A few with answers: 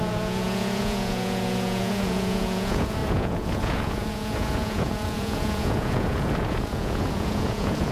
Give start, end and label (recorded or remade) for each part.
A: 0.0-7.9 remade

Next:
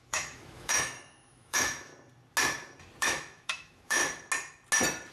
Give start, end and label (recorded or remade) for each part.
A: 0.0-1.9 remade; 1.9-3.0 recorded; 3.0-4.0 remade; 4.0-5.1 recorded

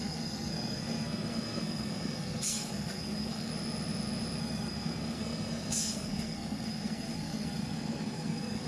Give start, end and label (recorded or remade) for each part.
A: 0.0-3.5 remade; 3.5-4.4 recorded; 4.4-8.7 remade

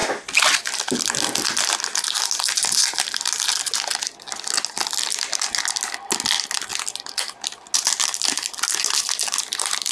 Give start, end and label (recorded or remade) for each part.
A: 0.0-9.9 recorded

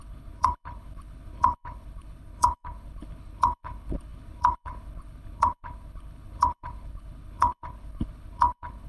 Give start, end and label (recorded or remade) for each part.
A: 0.0-8.9 remade

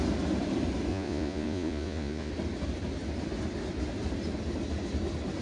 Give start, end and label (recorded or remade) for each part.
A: 0.0-0.9 recorded; 0.9-2.3 remade; 2.3-5.4 recorded

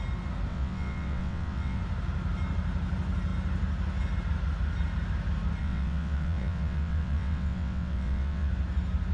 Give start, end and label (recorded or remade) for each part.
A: 0.0-0.5 recorded; 0.5-1.8 remade; 1.8-5.6 recorded; 5.6-8.5 remade; 8.5-9.1 recorded